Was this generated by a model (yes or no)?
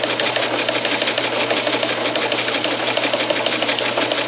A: no